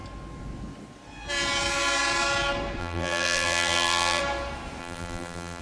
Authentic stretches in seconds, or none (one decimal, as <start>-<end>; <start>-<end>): 0.0-2.8; 4.2-4.8